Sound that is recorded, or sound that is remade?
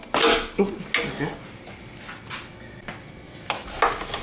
recorded